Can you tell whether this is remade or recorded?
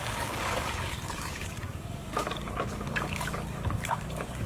remade